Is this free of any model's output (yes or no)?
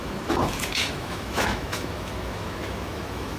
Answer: no